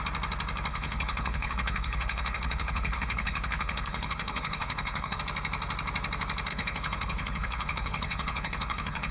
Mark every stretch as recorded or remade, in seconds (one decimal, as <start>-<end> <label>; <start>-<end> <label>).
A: 0.0-0.7 recorded; 0.7-5.2 remade; 5.2-6.5 recorded; 6.5-9.1 remade